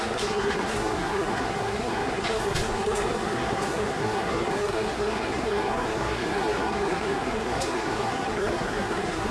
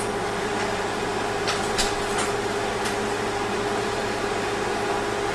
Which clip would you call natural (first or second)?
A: second